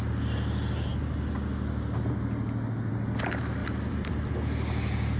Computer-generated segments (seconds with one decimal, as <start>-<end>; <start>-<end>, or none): 3.6-4.3